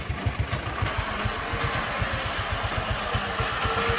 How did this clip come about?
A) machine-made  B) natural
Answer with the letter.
B